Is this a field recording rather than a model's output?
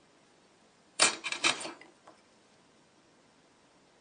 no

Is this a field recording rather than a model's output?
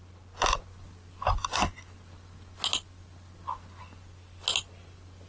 yes